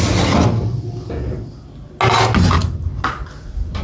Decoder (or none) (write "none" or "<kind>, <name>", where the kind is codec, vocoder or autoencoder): none